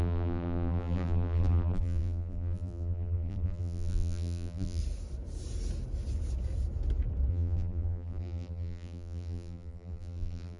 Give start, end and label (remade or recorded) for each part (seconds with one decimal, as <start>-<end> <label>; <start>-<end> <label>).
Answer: 0.0-4.8 remade; 4.8-7.3 recorded; 7.3-10.6 remade